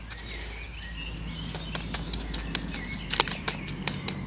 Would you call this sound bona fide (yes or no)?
yes